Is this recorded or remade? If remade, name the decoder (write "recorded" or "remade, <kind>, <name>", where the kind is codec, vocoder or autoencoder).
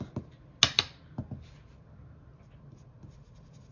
recorded